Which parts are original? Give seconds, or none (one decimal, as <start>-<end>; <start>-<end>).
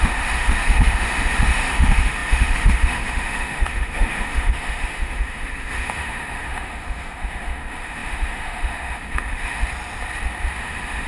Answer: 9.6-10.6